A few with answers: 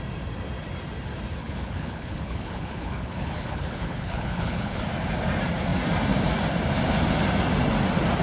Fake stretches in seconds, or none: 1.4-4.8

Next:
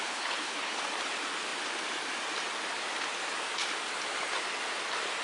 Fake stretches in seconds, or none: 0.0-0.8

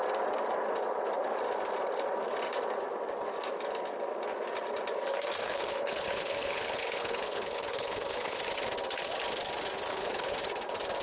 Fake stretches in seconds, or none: 5.4-8.4; 9.9-10.4

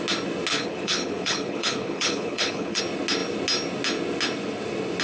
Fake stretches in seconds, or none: 0.5-2.8